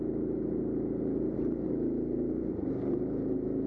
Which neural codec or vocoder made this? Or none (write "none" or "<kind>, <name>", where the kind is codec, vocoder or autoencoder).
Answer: none